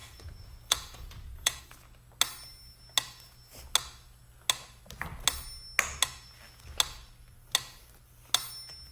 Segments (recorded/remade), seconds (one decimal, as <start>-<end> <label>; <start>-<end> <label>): 0.0-1.6 remade; 1.6-8.9 recorded